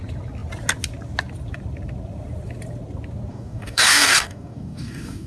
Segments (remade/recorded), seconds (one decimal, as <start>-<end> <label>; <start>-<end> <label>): 0.0-3.3 recorded; 3.3-5.3 remade